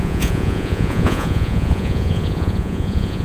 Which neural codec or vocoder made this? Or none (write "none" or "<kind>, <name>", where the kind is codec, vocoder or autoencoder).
vocoder, Vocos